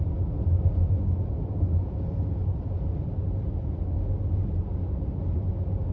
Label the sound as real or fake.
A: real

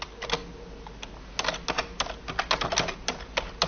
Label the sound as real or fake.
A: real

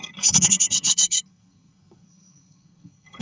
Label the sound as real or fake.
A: fake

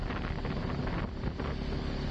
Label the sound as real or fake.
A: real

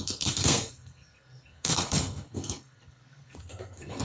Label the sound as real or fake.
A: fake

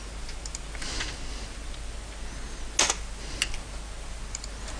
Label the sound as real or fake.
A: real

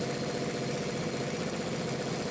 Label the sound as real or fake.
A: real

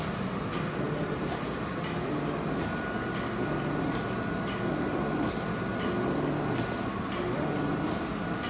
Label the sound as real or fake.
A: real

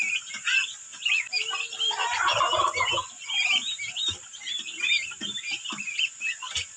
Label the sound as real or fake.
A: real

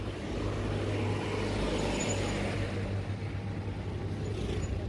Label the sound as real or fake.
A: real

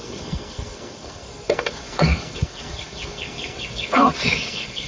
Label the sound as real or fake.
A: fake